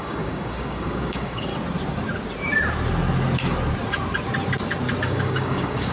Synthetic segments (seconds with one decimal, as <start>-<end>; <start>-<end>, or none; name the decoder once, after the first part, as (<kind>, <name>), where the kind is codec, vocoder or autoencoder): 0.0-1.5 (codec, DAC); 5.0-5.9